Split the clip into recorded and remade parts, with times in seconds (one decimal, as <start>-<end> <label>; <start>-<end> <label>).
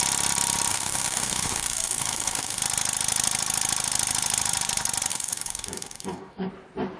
0.0-0.7 recorded; 0.7-2.6 remade; 2.6-5.1 recorded; 5.1-6.5 remade; 6.5-7.0 recorded